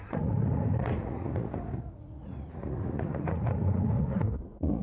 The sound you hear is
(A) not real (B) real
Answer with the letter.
A